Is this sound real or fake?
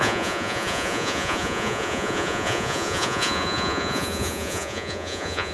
fake